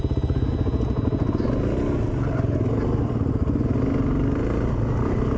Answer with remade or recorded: recorded